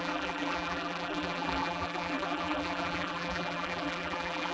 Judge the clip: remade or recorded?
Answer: remade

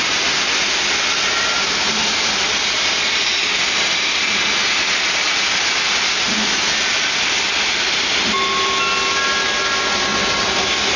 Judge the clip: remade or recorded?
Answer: recorded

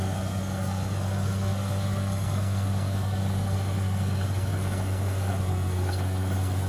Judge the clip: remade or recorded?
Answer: remade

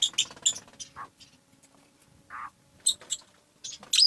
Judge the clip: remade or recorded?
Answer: recorded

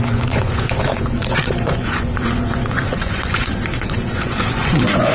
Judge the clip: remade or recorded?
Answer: remade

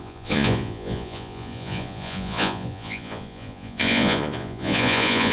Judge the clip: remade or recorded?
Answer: remade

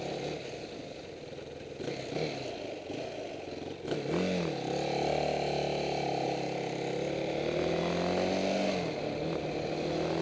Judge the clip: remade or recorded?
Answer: recorded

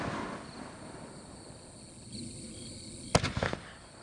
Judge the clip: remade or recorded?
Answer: recorded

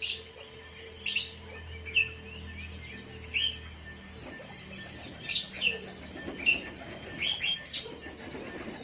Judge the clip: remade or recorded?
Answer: recorded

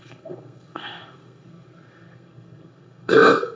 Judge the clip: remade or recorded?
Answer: remade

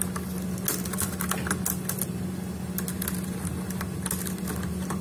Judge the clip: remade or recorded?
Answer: recorded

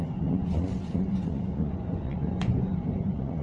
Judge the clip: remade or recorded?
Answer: remade